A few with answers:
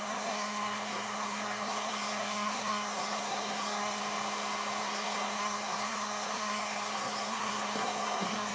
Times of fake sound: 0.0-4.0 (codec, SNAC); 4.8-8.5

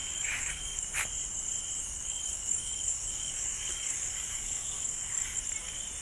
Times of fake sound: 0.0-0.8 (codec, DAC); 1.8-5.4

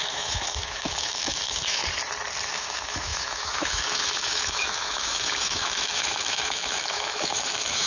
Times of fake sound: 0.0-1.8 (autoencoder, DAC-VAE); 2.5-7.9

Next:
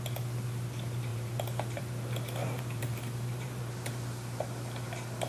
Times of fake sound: 1.1-1.8 (vocoder, BigVGAN v2); 2.4-3.6